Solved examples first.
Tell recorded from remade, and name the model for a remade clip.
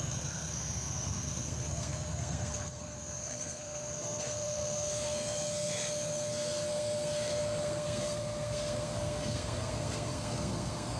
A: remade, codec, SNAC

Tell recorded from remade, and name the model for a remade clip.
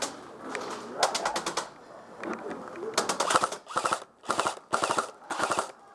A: recorded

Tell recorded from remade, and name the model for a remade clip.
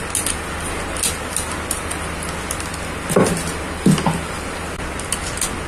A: recorded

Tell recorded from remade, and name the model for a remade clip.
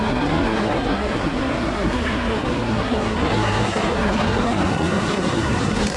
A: remade, codec, SNAC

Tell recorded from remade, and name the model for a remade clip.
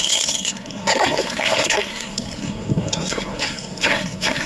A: remade, codec, SNAC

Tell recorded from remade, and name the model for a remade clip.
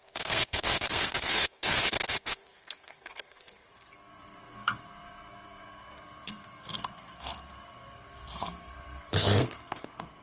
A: remade, codec, SNAC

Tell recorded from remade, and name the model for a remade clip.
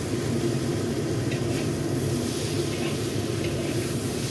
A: recorded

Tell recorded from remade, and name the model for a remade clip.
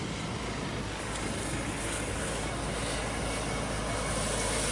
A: recorded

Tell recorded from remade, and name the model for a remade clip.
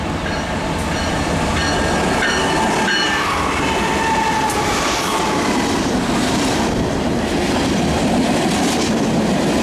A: recorded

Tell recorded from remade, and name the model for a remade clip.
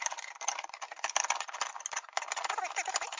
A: recorded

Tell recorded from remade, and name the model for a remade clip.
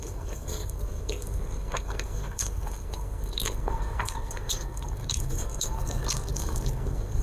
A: remade, codec, SNAC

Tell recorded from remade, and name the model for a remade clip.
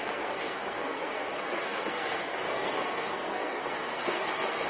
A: remade, codec, SNAC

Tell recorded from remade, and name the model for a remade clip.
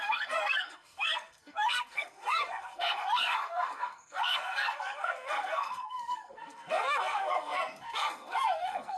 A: remade, codec, SNAC